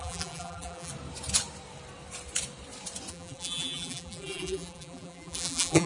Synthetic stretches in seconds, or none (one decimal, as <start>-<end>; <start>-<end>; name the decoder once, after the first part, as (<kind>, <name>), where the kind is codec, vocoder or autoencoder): 0.0-0.9 (vocoder, BigVGAN v2); 3.1-5.9